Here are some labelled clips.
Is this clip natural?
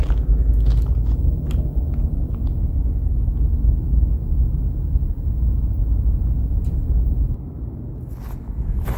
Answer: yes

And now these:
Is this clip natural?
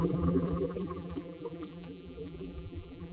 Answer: no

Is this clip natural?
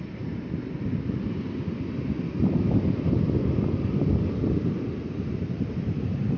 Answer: no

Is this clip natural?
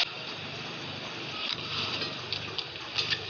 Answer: yes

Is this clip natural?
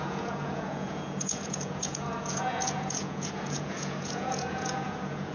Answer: no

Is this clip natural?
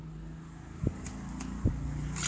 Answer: yes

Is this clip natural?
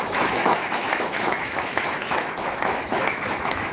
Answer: no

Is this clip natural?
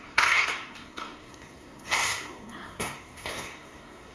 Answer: no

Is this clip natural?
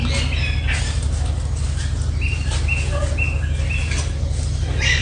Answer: yes